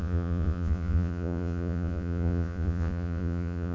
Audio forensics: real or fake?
fake